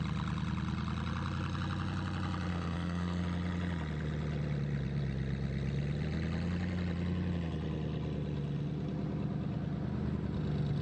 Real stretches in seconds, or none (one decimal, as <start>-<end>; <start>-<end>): 0.0-2.5; 3.2-10.8